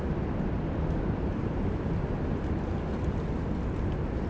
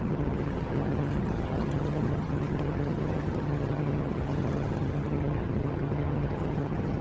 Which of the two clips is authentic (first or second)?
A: first